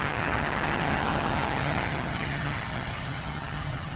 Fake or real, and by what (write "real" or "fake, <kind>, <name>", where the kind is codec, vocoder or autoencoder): fake, vocoder, HiFi-GAN